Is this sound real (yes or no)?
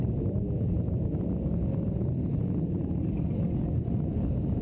yes